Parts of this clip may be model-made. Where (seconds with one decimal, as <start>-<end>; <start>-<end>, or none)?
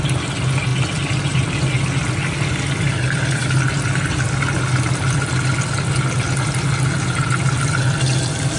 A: none